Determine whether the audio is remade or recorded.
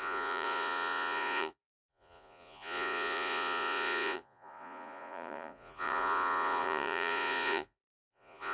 remade